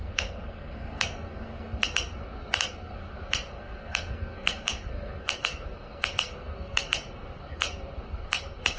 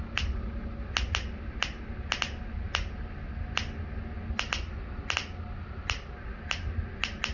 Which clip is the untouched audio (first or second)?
second